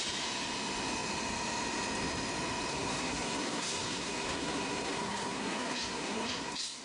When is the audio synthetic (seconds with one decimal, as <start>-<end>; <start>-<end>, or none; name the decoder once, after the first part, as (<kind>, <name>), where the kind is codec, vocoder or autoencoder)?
2.7-6.8 (codec, SNAC)